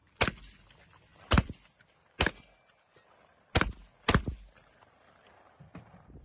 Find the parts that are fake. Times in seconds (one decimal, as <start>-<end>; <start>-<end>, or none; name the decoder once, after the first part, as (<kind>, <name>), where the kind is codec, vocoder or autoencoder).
none